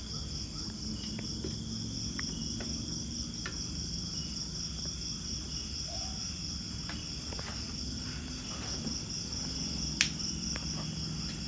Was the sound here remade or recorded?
recorded